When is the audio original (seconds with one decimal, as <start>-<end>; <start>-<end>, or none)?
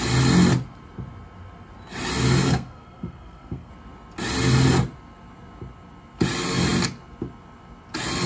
0.0-2.4; 3.7-8.3